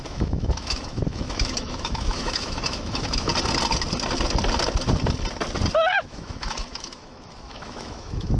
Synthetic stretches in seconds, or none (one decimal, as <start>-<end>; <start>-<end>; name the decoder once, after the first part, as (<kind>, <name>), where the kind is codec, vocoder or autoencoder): 0.0-3.3 (autoencoder, DAC-VAE); 5.9-8.4